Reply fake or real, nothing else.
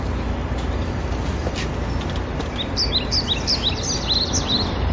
real